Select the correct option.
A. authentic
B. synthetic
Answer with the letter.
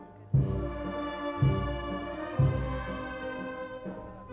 A